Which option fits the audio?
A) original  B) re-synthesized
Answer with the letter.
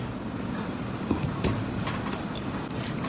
A